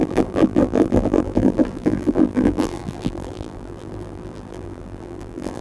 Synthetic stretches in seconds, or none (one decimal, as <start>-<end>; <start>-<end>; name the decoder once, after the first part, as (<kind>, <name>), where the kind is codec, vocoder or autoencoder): 0.0-5.6 (vocoder, BigVGAN v2)